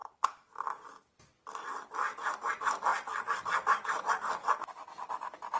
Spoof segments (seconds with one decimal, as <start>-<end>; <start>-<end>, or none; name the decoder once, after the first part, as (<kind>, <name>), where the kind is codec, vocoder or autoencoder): 0.0-5.6 (vocoder, BigVGAN v2)